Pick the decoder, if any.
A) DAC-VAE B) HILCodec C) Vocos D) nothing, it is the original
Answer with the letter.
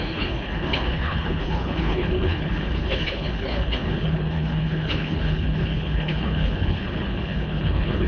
B